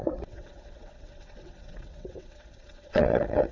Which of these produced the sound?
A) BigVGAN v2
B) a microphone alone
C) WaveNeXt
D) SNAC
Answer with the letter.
C